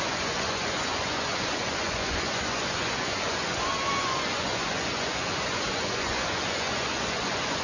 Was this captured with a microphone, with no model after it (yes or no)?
no